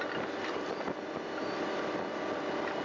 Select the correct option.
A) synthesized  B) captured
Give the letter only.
B